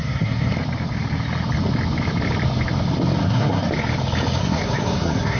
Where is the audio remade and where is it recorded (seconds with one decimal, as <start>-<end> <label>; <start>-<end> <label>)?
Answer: 0.0-0.5 remade; 0.5-3.2 recorded; 3.2-3.7 remade; 3.7-4.4 recorded; 4.4-5.4 remade

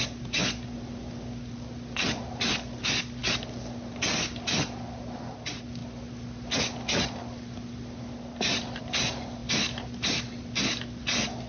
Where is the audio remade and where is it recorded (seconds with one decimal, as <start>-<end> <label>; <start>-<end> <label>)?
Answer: 0.0-11.5 recorded

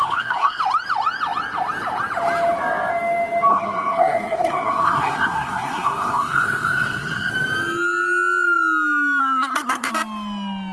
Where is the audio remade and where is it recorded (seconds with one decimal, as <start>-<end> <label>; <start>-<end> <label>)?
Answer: 0.0-0.6 remade; 0.6-3.5 recorded; 3.5-7.3 remade; 7.3-9.2 recorded; 9.2-9.9 remade; 9.9-10.7 recorded

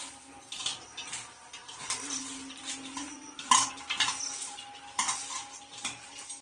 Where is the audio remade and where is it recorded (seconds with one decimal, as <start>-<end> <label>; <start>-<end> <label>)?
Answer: 0.0-6.4 recorded

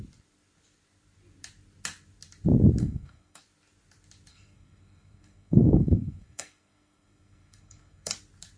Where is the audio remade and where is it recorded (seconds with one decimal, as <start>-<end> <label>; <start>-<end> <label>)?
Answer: 0.0-2.8 recorded; 2.8-3.4 remade; 3.4-4.3 recorded; 4.3-8.1 remade; 8.1-8.6 recorded

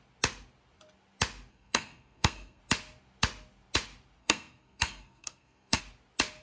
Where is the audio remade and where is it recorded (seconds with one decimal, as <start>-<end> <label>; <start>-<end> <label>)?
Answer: 0.0-1.5 recorded; 1.5-2.6 remade; 2.6-4.2 recorded; 4.2-5.8 remade; 5.8-6.4 recorded

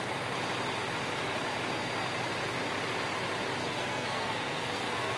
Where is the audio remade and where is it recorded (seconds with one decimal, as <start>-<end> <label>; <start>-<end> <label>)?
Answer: 0.0-3.6 recorded; 3.6-5.2 remade